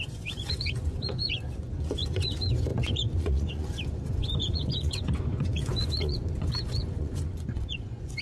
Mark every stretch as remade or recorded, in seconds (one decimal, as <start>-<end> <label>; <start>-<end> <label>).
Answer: 0.0-8.2 remade